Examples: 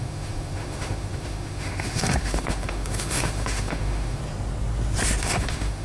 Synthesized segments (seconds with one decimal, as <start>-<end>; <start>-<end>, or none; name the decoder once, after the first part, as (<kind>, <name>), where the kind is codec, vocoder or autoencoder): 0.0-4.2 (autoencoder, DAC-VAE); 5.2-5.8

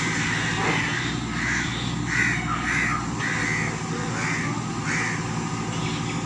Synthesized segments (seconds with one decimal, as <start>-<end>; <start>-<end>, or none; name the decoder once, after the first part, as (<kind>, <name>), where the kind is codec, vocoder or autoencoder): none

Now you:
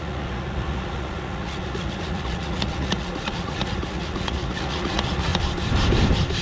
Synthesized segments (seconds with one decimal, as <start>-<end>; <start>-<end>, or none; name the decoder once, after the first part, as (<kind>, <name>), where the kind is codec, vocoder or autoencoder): 0.0-5.3 (vocoder, Vocos)

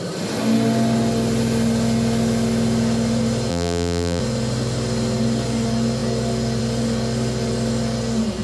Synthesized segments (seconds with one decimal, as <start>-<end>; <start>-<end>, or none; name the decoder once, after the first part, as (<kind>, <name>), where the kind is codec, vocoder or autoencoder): 3.5-4.2 (vocoder, BigVGAN v2)

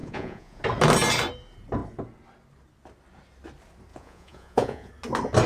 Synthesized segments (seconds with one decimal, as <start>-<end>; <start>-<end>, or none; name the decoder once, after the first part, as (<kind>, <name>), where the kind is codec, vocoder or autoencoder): 0.0-0.6 (vocoder, Vocos); 3.9-4.9